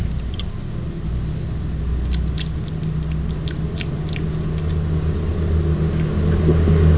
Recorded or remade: recorded